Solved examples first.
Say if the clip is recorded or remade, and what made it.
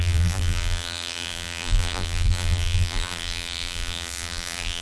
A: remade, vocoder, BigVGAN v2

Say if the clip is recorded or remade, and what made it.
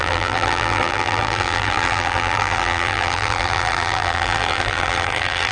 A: remade, vocoder, BigVGAN v2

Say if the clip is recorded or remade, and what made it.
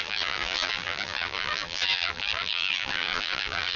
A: remade, vocoder, BigVGAN v2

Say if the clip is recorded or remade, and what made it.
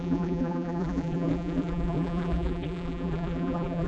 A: remade, vocoder, BigVGAN v2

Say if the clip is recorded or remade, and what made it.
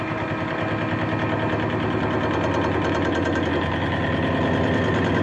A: recorded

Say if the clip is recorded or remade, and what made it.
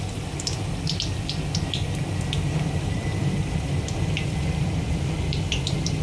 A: remade, vocoder, BigVGAN v2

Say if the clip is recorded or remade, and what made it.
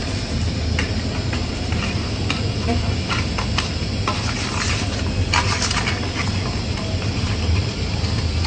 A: recorded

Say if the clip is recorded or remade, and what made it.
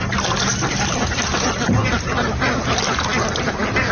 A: recorded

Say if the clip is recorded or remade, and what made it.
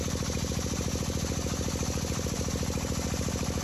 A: remade, vocoder, BigVGAN v2